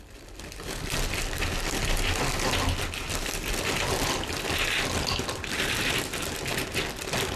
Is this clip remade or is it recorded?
recorded